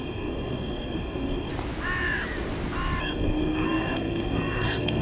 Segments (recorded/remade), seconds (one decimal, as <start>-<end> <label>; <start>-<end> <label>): 0.0-1.5 remade; 1.5-3.0 recorded; 3.0-5.0 remade